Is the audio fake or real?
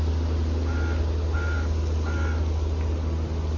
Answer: real